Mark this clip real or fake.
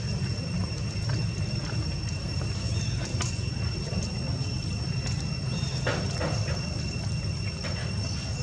real